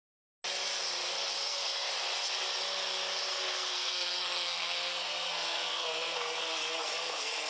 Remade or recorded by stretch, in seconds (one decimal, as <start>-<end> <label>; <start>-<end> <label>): 0.0-1.3 recorded; 1.3-1.9 remade; 1.9-3.3 recorded; 3.3-7.5 remade